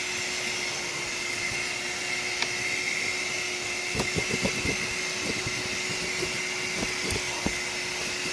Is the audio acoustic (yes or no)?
yes